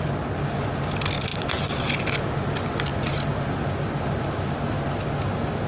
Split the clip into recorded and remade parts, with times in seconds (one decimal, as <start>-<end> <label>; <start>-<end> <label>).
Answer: 0.0-5.7 recorded